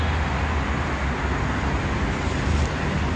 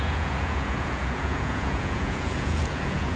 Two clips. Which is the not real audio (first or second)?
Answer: second